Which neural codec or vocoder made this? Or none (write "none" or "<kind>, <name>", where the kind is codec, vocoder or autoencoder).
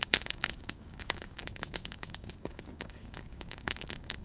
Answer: codec, DAC